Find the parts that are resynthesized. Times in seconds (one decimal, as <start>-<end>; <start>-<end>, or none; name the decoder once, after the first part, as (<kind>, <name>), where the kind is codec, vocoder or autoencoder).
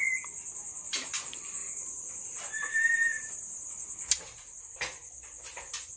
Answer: 1.6-4.6 (vocoder, BigVGAN v2)